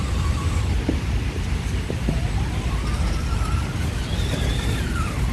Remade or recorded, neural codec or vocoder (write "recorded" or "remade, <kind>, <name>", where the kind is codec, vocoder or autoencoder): recorded